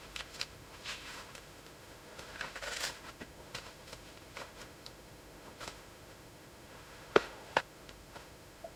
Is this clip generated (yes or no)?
yes